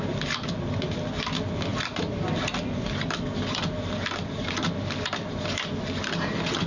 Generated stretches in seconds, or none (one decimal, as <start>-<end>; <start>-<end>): none